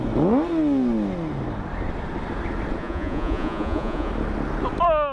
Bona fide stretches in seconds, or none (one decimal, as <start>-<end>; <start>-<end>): 0.0-2.8; 4.1-5.1